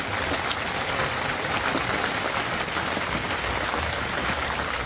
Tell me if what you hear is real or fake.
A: real